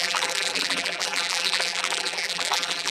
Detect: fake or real fake